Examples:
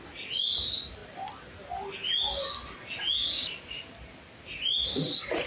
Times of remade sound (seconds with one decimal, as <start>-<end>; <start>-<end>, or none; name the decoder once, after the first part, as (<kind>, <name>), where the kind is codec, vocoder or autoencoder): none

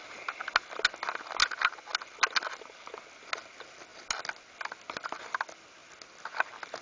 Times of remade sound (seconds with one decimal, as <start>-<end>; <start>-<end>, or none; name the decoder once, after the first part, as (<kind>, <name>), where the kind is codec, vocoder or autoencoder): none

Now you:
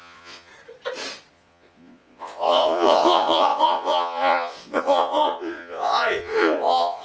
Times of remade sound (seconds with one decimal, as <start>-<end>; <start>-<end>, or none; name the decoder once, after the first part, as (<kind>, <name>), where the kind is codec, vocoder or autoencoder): 0.0-0.5 (vocoder, Vocos); 1.3-7.0

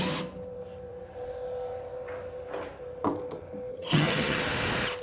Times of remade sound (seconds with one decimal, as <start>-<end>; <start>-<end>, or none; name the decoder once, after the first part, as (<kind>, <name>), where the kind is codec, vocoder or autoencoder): 3.7-4.4 (vocoder, HiFi-GAN)

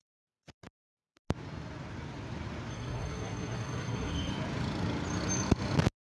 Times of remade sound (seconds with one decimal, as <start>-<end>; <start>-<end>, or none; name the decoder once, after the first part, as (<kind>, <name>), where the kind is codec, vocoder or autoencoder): 2.7-4.3 (codec, SNAC)